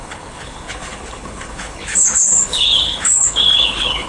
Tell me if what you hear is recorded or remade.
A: remade